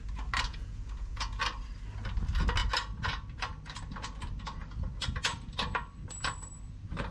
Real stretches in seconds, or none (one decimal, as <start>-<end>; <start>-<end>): 0.0-0.5; 1.4-7.1